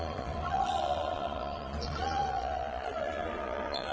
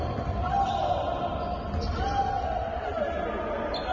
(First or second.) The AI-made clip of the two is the first